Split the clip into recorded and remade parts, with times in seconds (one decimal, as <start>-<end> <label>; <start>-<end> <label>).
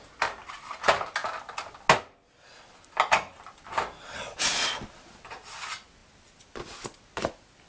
0.0-7.7 recorded